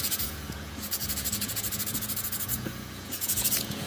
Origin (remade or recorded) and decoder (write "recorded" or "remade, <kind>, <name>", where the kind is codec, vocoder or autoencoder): remade, vocoder, Vocos